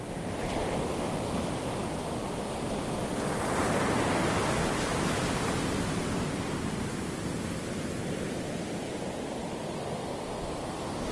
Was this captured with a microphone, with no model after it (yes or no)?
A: yes